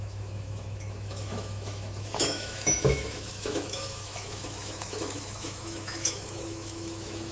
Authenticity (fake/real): fake